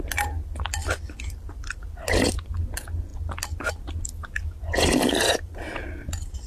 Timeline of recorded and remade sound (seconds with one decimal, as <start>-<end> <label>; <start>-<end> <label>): 0.0-6.5 recorded